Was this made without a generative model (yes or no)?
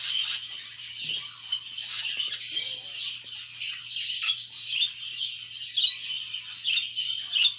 yes